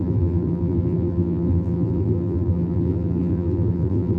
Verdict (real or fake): fake